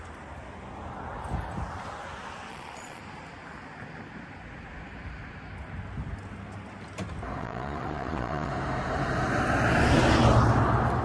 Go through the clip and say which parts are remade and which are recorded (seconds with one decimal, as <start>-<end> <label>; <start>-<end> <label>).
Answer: 0.0-2.5 recorded; 2.5-3.0 remade; 3.0-7.4 recorded; 7.4-8.5 remade; 8.5-11.0 recorded